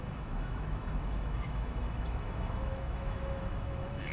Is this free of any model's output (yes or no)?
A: no